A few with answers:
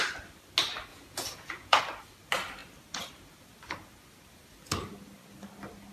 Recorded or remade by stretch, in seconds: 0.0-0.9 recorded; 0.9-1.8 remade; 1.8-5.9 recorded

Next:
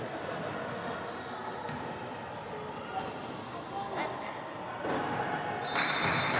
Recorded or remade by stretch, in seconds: 0.0-6.4 recorded

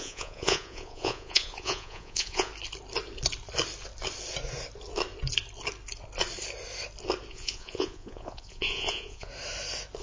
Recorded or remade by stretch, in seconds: 0.0-2.5 remade; 2.5-7.3 recorded; 7.3-9.3 remade; 9.3-10.0 recorded

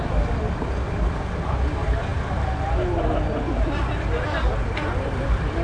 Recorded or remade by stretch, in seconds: 0.0-5.6 recorded

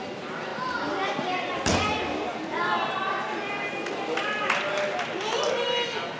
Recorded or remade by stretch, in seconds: 0.0-6.2 recorded

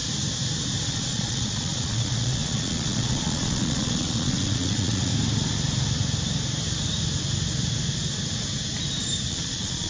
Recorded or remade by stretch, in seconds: 0.0-0.9 recorded; 0.9-5.1 remade; 5.1-9.3 recorded; 9.3-9.9 remade